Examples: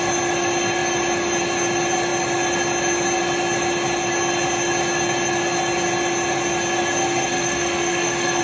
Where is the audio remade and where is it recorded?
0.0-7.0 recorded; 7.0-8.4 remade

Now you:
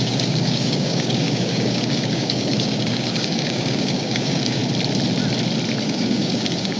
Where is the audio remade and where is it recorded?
0.0-4.6 remade; 4.6-5.8 recorded; 5.8-6.8 remade